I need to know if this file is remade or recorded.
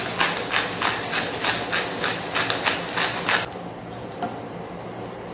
recorded